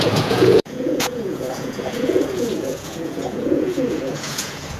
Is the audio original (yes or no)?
no